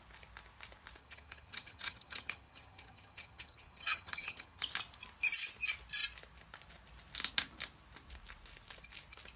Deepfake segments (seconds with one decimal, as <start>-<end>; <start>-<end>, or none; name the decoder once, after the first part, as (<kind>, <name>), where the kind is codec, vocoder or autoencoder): 1.0-4.6 (vocoder, HiFi-GAN)